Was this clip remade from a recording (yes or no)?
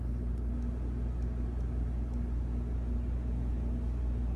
no